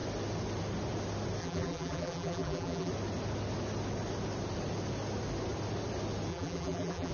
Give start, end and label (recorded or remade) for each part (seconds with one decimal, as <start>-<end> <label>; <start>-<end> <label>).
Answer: 0.0-1.4 recorded; 1.4-2.9 remade; 2.9-6.3 recorded; 6.3-7.1 remade